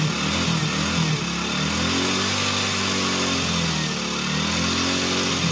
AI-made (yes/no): no